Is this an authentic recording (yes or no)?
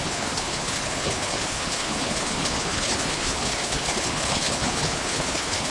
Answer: no